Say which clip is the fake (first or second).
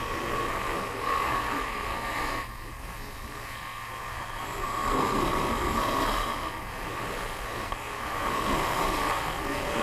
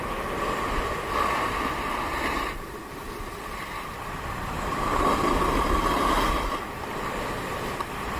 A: first